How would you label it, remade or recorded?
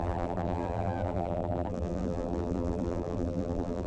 remade